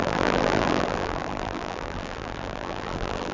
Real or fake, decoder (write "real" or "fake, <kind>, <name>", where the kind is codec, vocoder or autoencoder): fake, vocoder, BigVGAN v2